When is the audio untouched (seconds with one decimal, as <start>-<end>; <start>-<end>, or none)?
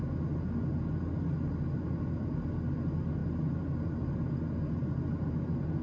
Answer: 0.0-5.8